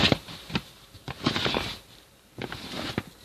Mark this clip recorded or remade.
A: recorded